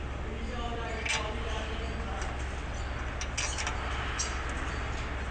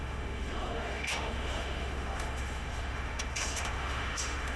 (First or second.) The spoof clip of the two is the second